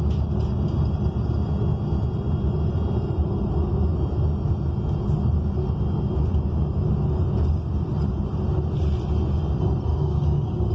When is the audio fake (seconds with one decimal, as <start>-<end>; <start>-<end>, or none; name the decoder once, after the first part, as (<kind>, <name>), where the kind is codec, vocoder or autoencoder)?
9.9-10.7 (codec, DAC)